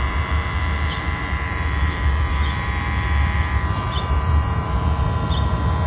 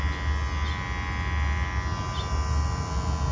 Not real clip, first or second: first